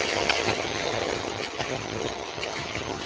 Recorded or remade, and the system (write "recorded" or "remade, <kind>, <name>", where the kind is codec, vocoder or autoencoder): remade, vocoder, HiFi-GAN